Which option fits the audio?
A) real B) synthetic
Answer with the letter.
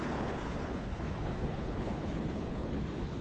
B